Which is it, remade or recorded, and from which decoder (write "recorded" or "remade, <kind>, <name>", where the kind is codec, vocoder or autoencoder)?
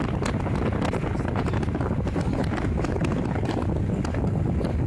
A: recorded